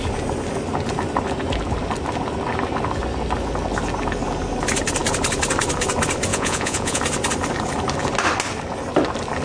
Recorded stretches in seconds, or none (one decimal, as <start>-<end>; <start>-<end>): 0.0-6.3; 7.0-9.4